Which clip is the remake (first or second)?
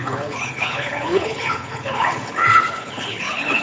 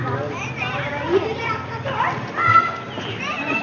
first